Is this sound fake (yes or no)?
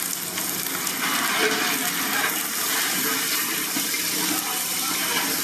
no